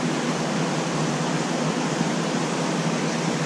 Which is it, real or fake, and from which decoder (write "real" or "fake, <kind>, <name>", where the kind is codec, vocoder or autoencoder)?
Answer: real